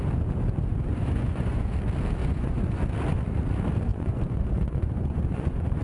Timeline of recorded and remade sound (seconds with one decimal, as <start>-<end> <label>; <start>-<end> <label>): 0.0-0.7 recorded; 0.7-1.7 remade; 1.7-2.2 recorded; 2.2-2.8 remade; 2.8-3.9 recorded; 3.9-5.8 remade